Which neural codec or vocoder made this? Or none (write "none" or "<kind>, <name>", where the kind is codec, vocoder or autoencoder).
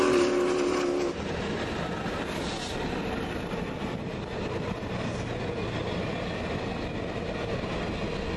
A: none